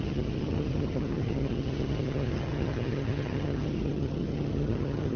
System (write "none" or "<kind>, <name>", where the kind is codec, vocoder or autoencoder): vocoder, HiFi-GAN